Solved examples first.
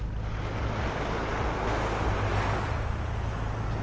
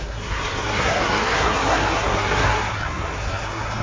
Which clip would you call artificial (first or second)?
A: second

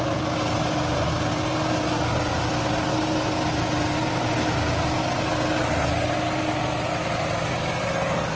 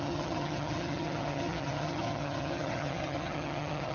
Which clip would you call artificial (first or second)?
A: second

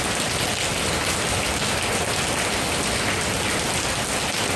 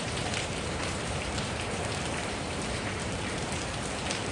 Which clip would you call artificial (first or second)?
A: second